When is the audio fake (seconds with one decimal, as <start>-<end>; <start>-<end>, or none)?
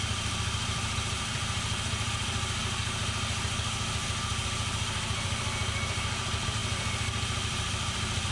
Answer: 0.0-2.6; 4.4-8.3